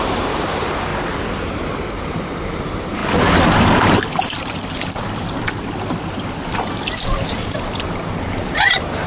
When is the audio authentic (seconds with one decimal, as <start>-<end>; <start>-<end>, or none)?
0.9-1.9; 3.0-7.3